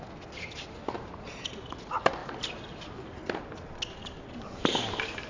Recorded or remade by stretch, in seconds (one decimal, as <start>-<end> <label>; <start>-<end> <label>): 0.0-5.3 recorded